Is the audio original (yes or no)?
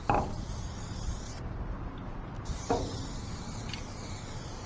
yes